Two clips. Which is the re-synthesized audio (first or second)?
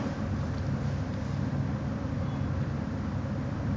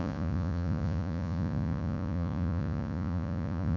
second